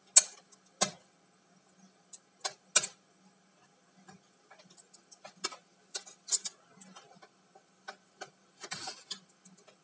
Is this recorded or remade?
recorded